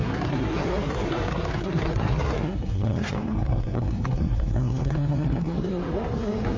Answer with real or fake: fake